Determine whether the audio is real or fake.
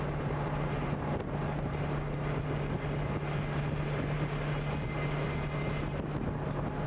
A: real